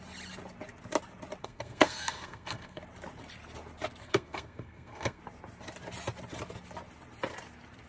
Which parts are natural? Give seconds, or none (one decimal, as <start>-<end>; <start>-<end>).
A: 0.0-1.4; 2.8-4.0; 5.2-7.9